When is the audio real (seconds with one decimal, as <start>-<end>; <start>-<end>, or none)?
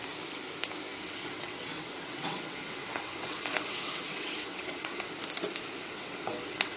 0.0-1.0; 5.1-5.8